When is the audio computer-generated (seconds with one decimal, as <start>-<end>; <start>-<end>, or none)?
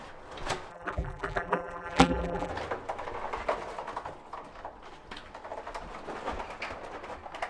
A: 0.7-2.5